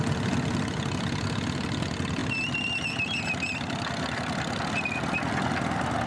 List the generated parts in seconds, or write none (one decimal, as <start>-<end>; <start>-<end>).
none